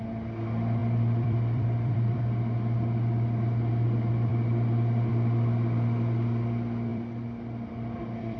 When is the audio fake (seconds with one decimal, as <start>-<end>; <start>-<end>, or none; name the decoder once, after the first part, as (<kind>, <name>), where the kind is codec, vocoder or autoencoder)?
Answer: 0.8-2.2 (vocoder, BigVGAN v2); 6.9-8.4